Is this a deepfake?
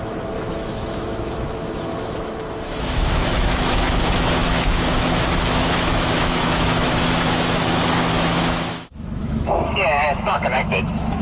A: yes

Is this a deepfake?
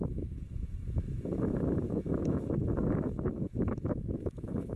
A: yes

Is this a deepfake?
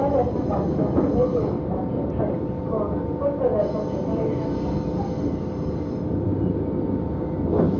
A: no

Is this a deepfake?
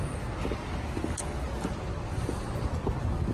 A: no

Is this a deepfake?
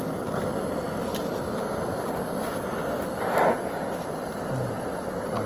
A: no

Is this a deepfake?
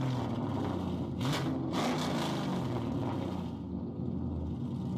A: no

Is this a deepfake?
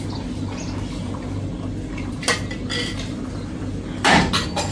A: no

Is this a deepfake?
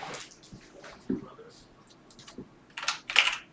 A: no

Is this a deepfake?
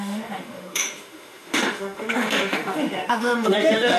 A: yes